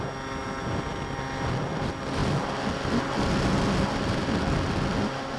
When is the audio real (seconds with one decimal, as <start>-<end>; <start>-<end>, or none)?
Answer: 0.0-5.4